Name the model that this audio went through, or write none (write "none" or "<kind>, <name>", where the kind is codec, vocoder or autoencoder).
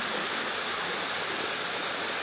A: none